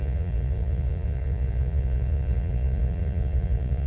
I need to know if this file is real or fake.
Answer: fake